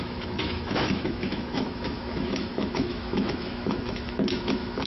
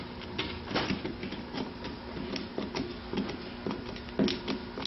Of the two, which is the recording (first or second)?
second